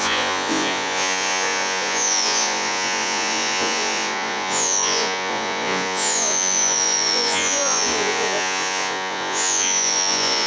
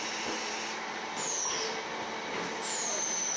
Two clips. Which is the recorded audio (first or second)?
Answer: second